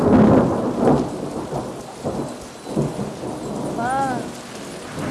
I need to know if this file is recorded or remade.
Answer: recorded